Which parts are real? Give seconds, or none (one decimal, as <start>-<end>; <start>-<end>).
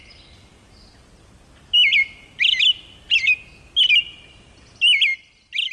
0.0-5.7